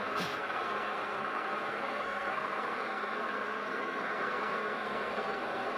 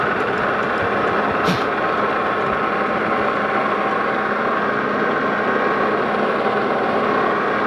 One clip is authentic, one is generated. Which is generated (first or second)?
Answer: first